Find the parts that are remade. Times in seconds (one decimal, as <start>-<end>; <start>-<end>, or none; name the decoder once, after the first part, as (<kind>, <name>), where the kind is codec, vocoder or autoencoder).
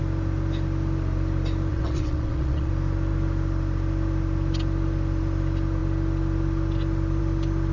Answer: 1.7-2.7 (vocoder, WaveNeXt)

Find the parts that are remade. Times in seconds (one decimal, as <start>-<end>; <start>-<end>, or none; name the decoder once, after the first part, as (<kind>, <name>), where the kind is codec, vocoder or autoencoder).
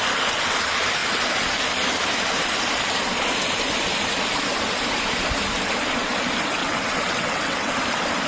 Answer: 6.6-7.7 (vocoder, WaveNeXt)